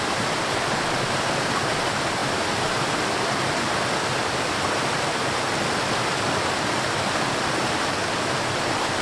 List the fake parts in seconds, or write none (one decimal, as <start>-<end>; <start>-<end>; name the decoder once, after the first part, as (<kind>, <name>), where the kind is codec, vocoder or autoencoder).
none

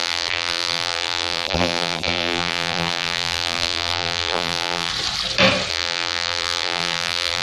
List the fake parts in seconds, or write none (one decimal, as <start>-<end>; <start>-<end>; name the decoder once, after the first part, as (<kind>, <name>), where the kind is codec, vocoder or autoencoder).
0.0-4.9 (vocoder, BigVGAN v2); 5.7-7.4

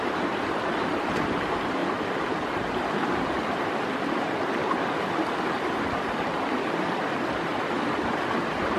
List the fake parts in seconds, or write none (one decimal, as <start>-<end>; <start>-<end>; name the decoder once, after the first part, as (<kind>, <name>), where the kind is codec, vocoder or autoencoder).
7.5-8.1 (vocoder, BigVGAN v2)

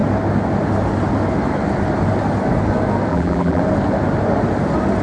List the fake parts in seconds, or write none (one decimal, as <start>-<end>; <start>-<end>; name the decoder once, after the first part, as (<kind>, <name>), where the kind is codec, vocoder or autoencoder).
3.1-3.6 (vocoder, BigVGAN v2)

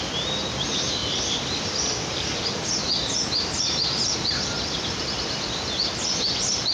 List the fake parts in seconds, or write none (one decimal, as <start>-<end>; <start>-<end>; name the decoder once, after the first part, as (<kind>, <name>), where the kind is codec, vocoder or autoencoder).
none